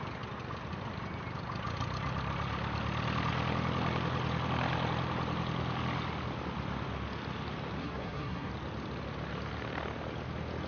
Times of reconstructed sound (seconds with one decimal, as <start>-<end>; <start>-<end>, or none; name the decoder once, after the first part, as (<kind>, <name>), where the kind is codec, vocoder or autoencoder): 7.8-8.5 (codec, SNAC)